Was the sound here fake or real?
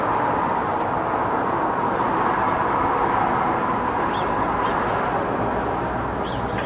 real